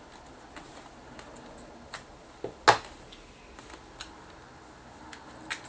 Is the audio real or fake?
real